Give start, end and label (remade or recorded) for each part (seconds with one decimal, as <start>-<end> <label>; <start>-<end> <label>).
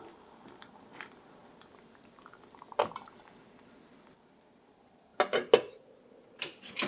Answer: 0.0-6.9 recorded